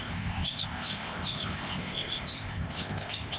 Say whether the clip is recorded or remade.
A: remade